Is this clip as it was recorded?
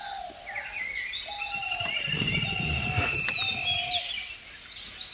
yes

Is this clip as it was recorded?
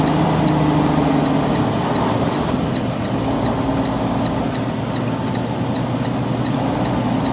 yes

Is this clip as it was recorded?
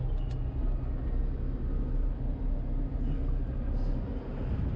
yes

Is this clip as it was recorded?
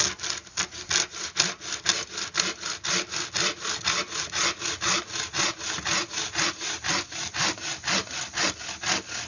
yes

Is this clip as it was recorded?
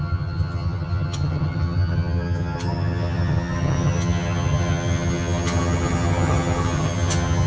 no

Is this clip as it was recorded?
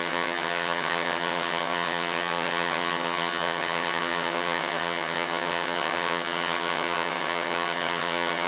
no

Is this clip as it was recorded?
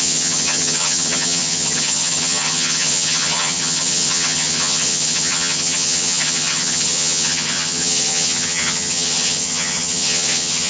no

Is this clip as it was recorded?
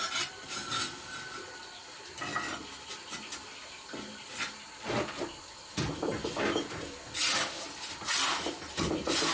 yes